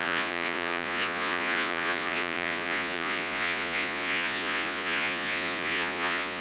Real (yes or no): no